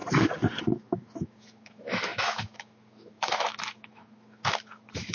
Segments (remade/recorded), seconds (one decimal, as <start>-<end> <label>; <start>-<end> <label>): 0.0-0.7 recorded; 0.7-5.1 remade

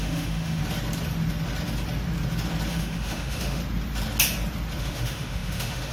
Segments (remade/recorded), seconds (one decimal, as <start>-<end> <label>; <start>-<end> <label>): 0.0-0.6 remade; 0.6-2.7 recorded; 2.7-3.6 remade; 3.6-4.8 recorded; 4.8-5.9 remade

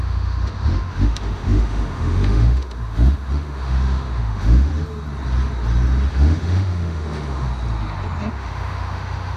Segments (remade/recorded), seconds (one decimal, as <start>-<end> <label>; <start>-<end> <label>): 0.0-4.7 remade; 4.7-6.1 recorded; 6.1-7.5 remade; 7.5-8.3 recorded; 8.3-9.4 remade

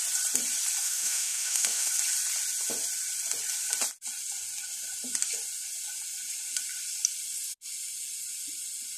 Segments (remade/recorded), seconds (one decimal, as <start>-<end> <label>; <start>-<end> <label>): 0.0-0.8 recorded; 0.8-1.9 remade; 1.9-9.0 recorded

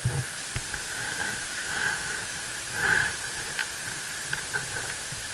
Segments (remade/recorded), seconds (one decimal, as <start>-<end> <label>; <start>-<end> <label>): 0.0-1.2 recorded; 1.2-3.1 remade; 3.1-5.3 recorded